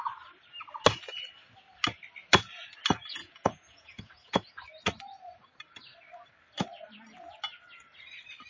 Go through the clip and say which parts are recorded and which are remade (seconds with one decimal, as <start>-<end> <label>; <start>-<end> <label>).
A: 0.0-3.2 recorded; 3.2-4.5 remade; 4.5-8.5 recorded

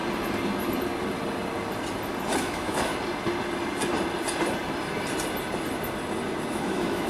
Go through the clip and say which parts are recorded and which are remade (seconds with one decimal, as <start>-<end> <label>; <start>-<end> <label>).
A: 0.0-2.4 recorded; 2.4-2.9 remade; 2.9-6.5 recorded; 6.5-7.1 remade